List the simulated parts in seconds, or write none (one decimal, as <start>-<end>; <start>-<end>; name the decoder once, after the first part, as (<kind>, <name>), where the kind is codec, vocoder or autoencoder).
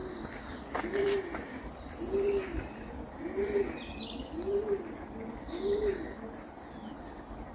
none